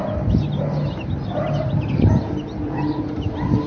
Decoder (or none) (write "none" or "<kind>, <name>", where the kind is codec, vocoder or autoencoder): none